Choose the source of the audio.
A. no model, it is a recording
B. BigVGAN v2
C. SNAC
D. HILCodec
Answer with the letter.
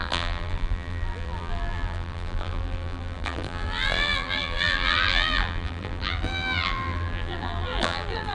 B